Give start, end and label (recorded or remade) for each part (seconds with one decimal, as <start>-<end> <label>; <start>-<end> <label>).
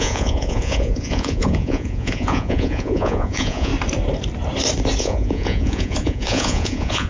0.0-3.7 remade; 3.7-5.0 recorded; 5.0-7.1 remade